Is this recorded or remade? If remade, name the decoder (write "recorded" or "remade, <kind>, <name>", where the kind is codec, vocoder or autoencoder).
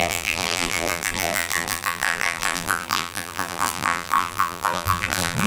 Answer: remade, vocoder, BigVGAN v2